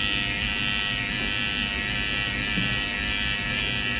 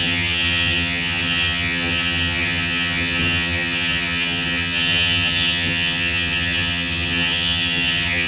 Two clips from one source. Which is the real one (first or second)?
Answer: first